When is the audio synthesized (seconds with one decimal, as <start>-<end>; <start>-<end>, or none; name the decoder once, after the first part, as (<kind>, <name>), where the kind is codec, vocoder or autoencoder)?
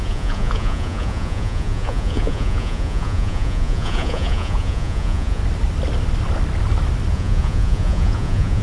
0.0-5.4 (vocoder, Vocos); 7.1-8.6